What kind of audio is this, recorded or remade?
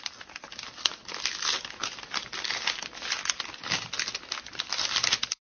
recorded